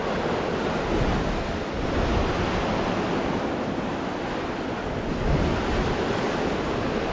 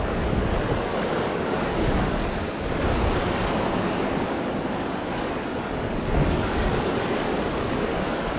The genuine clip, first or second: first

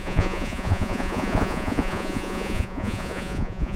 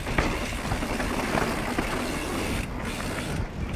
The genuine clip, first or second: second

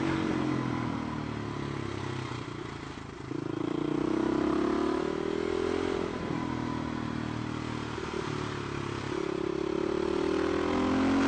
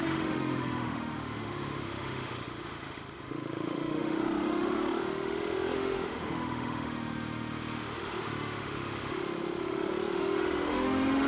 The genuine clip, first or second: first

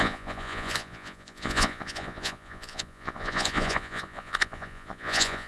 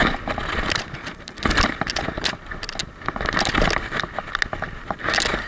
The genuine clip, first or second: second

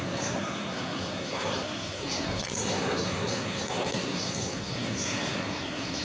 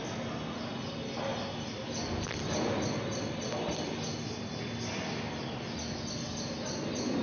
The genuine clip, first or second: second